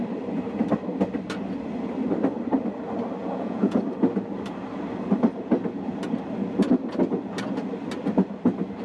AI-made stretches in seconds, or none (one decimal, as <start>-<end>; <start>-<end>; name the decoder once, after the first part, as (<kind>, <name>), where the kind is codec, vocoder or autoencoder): 3.2-3.8 (vocoder, Vocos)